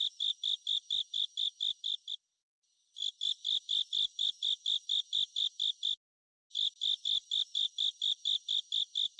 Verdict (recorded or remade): recorded